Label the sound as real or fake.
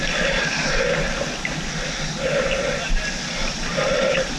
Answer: real